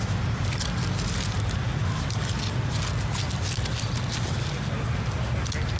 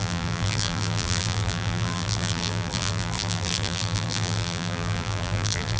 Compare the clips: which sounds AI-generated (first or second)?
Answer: second